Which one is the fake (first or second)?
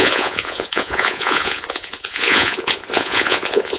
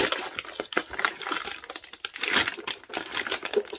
first